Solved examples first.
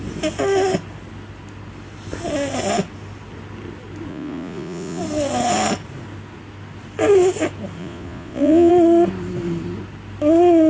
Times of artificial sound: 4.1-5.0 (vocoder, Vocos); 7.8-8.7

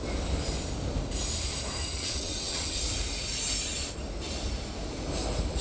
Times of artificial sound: 1.9-2.8 (vocoder, WaveNeXt)

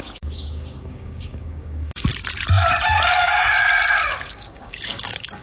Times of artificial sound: 0.0-2.1 (codec, DAC); 4.2-5.4